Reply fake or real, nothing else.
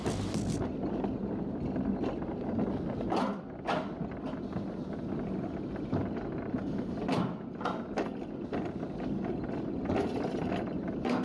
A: real